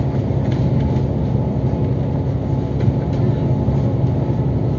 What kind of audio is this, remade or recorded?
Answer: recorded